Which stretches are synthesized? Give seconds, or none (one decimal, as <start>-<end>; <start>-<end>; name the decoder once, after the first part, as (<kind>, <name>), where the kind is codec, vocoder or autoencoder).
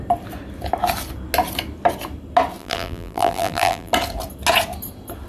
2.6-3.9 (vocoder, BigVGAN v2)